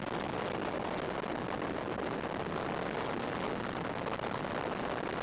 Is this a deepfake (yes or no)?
no